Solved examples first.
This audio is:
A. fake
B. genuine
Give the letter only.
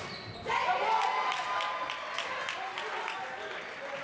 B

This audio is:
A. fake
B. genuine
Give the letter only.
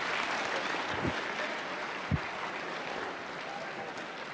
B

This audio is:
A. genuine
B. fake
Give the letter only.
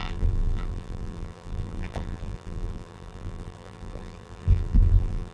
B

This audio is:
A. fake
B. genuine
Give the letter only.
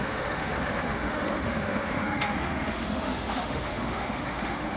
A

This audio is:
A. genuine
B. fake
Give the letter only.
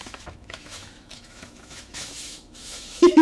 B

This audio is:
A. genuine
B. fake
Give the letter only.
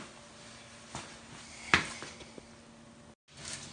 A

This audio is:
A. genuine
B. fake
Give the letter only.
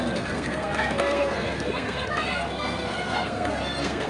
B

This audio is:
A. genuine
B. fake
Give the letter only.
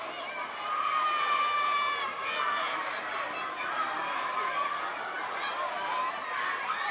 A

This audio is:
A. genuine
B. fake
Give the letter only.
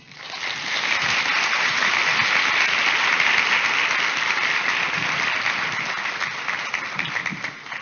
A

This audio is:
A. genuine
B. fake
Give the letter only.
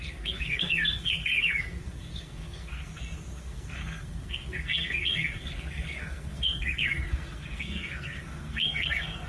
B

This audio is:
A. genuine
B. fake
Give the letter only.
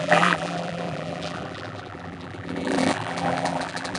B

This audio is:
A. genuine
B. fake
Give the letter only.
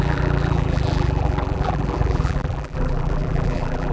B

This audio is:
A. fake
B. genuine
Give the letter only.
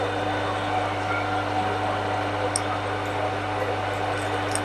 B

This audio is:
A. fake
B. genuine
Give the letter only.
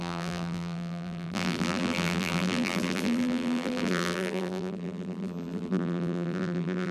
A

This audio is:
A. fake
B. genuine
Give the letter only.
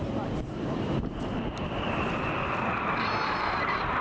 A